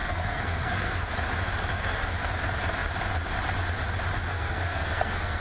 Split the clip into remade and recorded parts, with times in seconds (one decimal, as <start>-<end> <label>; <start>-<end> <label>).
0.0-1.0 remade; 1.0-1.7 recorded; 1.7-2.3 remade; 2.3-4.3 recorded; 4.3-5.4 remade